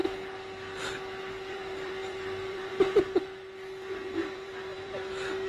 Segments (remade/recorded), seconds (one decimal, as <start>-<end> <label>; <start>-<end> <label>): 0.0-1.5 recorded; 1.5-2.7 remade; 2.7-4.1 recorded; 4.1-5.5 remade